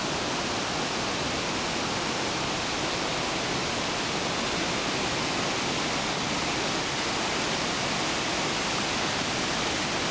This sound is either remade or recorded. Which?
recorded